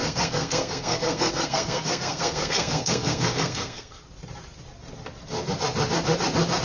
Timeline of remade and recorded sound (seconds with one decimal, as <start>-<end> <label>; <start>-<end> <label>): 0.0-4.0 remade; 4.0-6.6 recorded